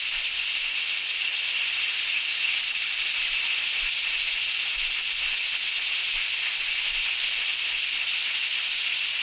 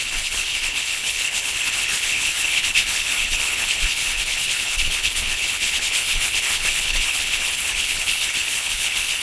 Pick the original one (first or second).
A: first